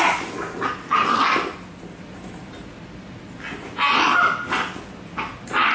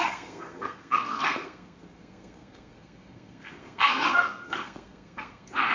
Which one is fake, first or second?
second